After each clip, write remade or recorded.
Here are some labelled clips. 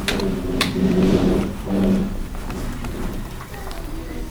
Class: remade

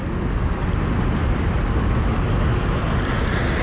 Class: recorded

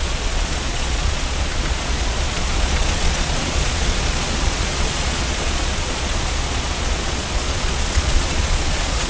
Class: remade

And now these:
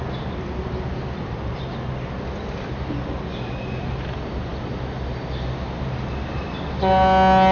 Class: recorded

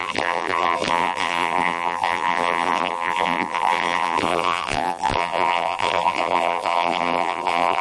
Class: remade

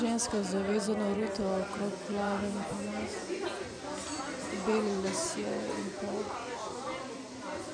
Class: recorded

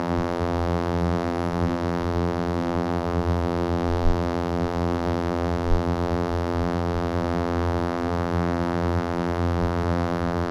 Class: remade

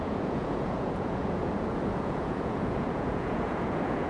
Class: remade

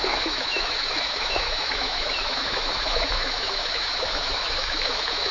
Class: remade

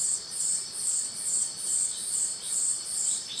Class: remade